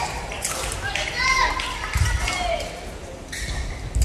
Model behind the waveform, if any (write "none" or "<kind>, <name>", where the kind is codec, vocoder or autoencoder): none